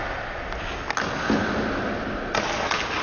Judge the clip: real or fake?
real